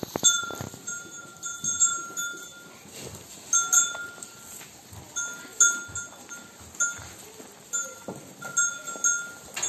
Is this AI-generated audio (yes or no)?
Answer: no